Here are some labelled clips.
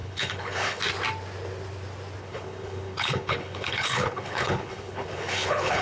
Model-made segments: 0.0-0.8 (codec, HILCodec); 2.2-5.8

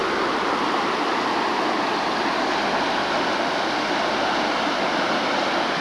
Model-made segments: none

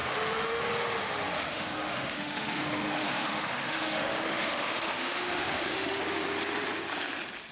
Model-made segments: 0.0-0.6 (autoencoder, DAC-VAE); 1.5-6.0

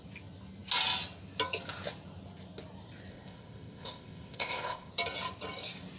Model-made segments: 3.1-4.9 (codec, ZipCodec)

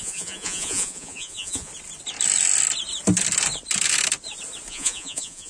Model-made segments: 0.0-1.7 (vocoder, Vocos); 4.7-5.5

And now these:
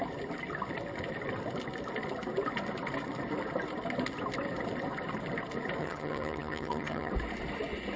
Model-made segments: 5.8-7.1 (vocoder, HiFi-GAN)

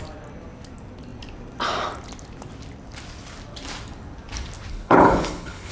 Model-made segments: 4.7-5.7 (codec, HILCodec)

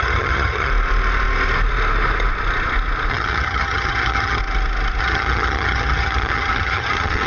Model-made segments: 0.0-0.7 (vocoder, HiFi-GAN); 3.1-4.4; 5.0-7.3